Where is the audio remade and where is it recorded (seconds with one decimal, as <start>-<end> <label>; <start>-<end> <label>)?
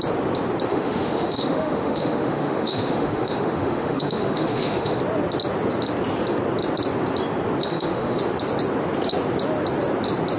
0.0-0.7 recorded; 0.7-5.0 remade; 5.0-7.6 recorded; 7.6-8.2 remade; 8.2-10.4 recorded